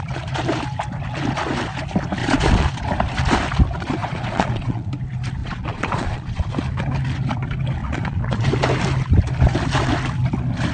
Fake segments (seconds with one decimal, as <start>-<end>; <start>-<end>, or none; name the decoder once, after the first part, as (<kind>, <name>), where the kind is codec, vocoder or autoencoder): 2.2-2.7 (vocoder, Vocos); 4.0-4.9; 5.4-6.5; 7.8-8.5